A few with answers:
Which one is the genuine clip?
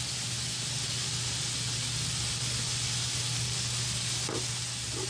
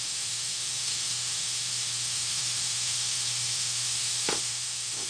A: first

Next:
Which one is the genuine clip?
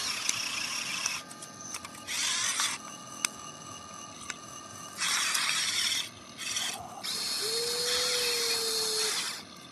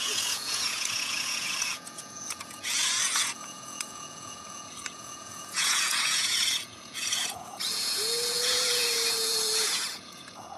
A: first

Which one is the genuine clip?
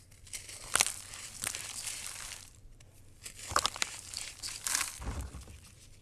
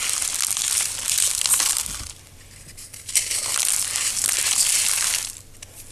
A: second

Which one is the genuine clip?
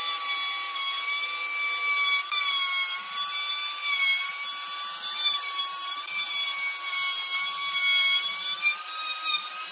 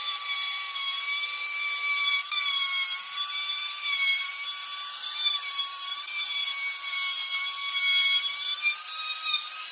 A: first